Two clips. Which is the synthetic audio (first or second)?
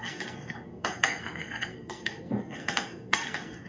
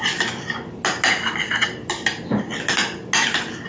first